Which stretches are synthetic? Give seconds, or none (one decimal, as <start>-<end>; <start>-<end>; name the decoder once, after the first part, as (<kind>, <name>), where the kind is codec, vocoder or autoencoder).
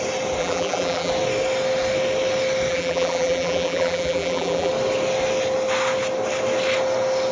0.4-1.1 (vocoder, BigVGAN v2); 2.7-4.7